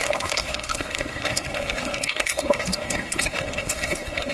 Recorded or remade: remade